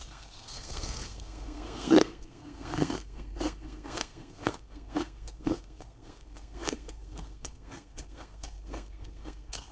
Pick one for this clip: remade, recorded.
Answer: remade